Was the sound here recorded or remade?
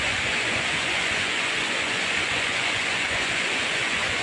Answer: remade